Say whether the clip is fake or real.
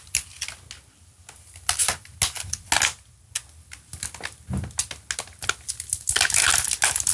real